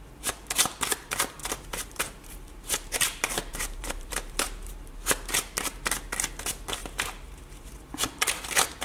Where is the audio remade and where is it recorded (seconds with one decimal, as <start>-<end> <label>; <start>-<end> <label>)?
0.0-1.4 recorded; 1.4-5.3 remade; 5.3-6.8 recorded; 6.8-7.7 remade; 7.7-8.8 recorded